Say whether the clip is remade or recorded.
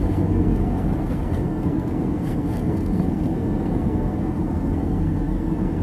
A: remade